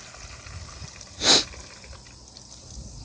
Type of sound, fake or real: real